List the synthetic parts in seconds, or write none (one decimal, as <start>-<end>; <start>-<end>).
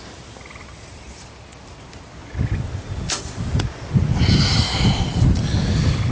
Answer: none